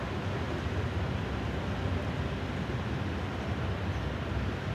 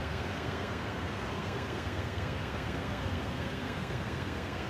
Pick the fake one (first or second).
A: second